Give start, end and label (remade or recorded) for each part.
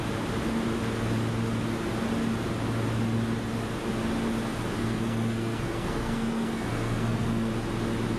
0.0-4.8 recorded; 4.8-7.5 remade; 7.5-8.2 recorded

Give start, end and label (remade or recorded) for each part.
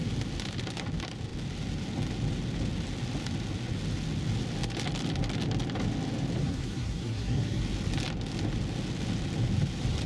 0.0-6.4 recorded; 6.4-7.6 remade; 7.6-10.1 recorded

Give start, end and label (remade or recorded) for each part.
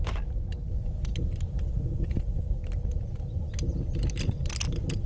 0.0-5.1 recorded